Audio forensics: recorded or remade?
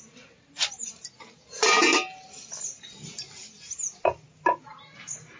recorded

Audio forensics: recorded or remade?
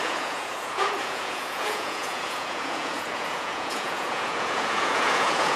remade